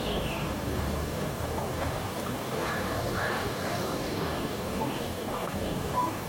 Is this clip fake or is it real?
fake